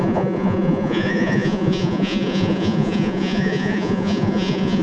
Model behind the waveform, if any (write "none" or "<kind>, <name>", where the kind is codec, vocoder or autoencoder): vocoder, Vocos